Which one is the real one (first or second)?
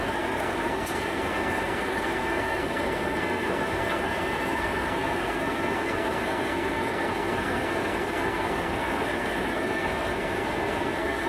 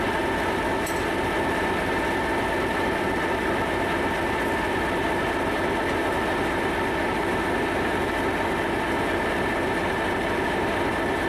second